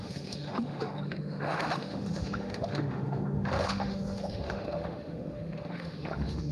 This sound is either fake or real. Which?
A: fake